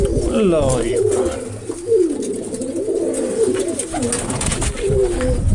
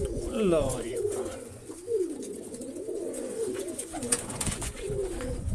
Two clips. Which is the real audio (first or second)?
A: first